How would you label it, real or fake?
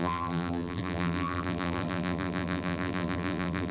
fake